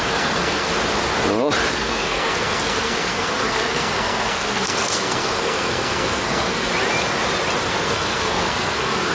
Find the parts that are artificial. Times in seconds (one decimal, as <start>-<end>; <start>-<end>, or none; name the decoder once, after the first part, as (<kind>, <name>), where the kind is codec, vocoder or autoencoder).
0.0-0.7 (codec, SNAC); 1.7-6.7; 7.7-9.1